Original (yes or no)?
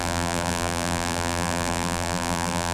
no